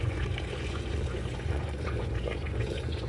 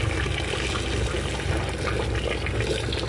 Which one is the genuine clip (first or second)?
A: second